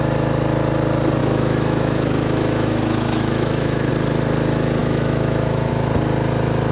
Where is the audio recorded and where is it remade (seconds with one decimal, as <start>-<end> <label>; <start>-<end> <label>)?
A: 0.0-1.2 recorded; 1.2-3.9 remade; 3.9-4.8 recorded; 4.8-5.7 remade; 5.7-6.7 recorded